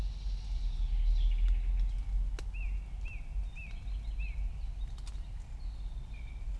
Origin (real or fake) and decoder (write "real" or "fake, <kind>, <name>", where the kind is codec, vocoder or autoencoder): real